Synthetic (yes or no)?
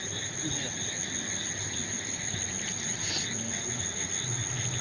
no